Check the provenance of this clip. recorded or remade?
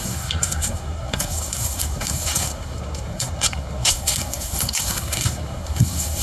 remade